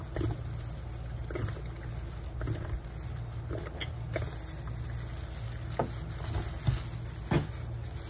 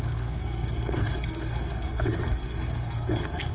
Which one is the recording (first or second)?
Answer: first